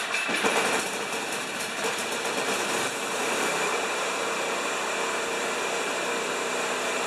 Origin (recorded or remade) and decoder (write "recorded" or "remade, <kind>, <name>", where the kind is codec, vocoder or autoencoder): remade, vocoder, BigVGAN v2